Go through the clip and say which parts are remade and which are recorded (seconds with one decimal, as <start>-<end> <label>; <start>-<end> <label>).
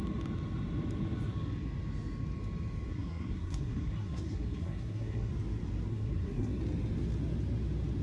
0.0-2.9 recorded; 2.9-5.3 remade; 5.3-5.9 recorded; 5.9-6.6 remade; 6.6-8.0 recorded